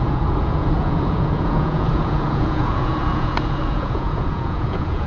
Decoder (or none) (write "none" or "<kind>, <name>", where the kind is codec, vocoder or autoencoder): vocoder, Vocos